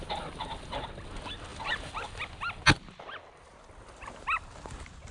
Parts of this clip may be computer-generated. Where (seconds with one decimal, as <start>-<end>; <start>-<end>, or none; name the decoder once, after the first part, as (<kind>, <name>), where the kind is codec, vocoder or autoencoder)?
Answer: none